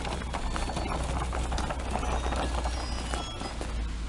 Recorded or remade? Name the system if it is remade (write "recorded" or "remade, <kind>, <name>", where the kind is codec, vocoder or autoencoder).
recorded